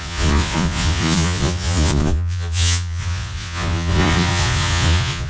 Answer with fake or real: fake